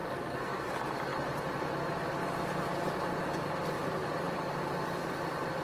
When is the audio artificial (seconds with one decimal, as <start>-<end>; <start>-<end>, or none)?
0.0-0.7